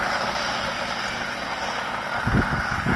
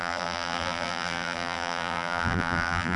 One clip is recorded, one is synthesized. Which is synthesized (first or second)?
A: second